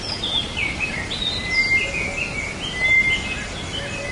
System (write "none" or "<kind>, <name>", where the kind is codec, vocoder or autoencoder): none